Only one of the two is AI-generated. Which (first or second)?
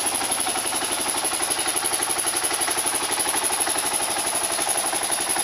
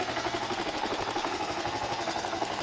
second